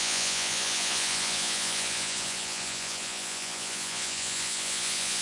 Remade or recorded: remade